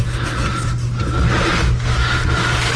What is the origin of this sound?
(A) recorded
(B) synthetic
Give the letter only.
A